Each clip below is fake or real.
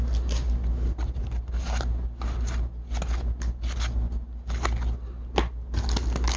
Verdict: real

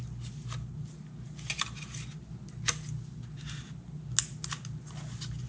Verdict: real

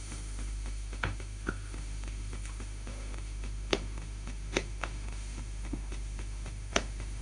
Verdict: fake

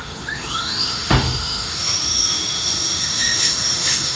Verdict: fake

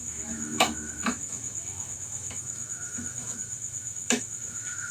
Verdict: fake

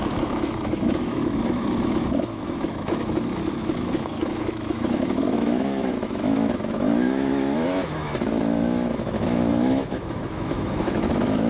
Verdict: fake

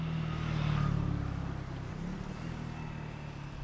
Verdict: real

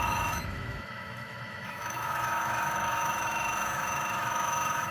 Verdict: fake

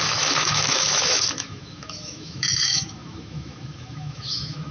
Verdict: fake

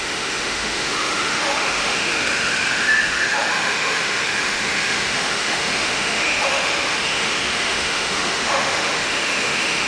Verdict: fake